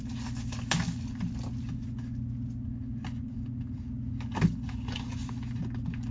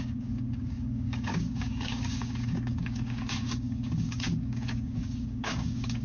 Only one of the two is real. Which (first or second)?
first